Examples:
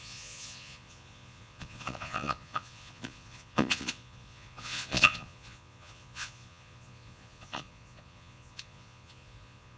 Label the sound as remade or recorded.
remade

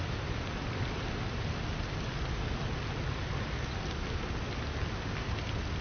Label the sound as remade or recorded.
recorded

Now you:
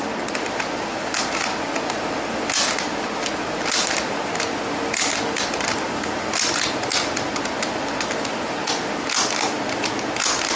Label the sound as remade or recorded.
recorded